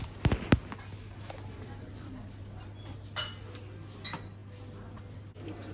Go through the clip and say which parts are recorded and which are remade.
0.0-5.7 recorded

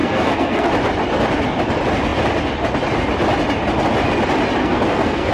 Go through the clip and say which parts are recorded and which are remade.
0.0-0.7 remade; 0.7-4.6 recorded; 4.6-5.3 remade

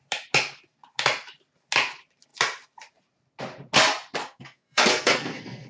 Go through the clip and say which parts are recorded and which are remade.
0.0-4.2 recorded; 4.2-5.7 remade

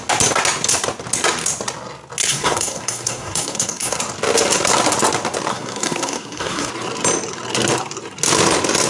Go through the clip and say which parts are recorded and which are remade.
0.0-2.2 recorded; 2.2-4.0 remade; 4.0-5.5 recorded; 5.5-6.7 remade; 6.7-8.9 recorded

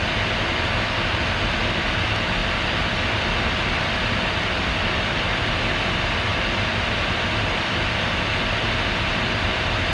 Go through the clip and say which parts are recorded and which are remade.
0.0-9.9 recorded